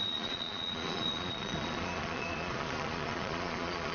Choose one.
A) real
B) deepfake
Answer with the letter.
B